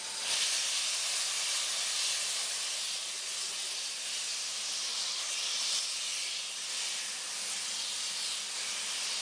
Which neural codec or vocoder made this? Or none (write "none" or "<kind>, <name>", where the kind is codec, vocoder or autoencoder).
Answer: none